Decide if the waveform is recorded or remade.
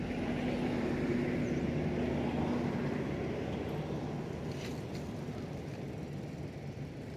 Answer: recorded